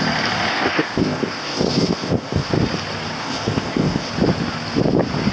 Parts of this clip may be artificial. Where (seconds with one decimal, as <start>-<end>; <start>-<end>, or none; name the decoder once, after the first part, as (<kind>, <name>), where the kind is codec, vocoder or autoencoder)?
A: 0.5-2.5 (codec, ZipCodec); 3.2-4.1